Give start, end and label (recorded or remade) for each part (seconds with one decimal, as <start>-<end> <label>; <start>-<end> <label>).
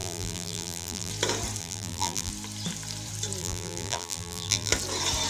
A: 0.0-1.1 remade; 1.1-1.6 recorded; 1.6-2.3 remade; 2.3-3.4 recorded; 3.4-4.7 remade; 4.7-5.3 recorded